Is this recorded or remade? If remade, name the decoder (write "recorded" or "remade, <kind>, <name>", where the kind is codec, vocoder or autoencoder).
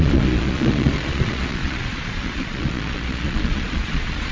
remade, vocoder, Vocos